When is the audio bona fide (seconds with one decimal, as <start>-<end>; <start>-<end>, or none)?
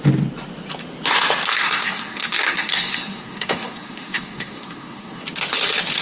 0.0-1.6; 5.2-6.0